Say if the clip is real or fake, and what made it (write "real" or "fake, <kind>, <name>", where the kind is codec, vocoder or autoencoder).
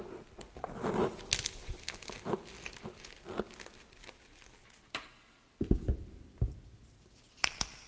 real